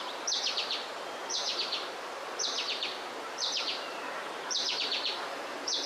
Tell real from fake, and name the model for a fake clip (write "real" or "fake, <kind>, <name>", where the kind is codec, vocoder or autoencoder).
fake, vocoder, BigVGAN v2